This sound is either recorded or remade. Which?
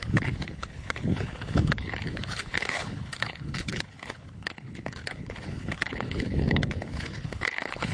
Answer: remade